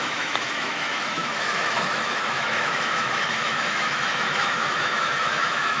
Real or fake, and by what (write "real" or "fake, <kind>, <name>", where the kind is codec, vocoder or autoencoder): fake, autoencoder, DAC-VAE